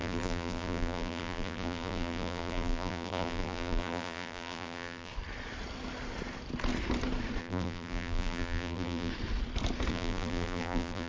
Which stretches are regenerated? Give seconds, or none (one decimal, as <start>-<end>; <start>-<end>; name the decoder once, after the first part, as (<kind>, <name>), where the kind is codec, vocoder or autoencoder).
0.0-5.1 (vocoder, BigVGAN v2); 7.4-9.1; 9.9-11.1